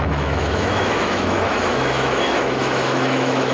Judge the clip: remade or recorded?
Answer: remade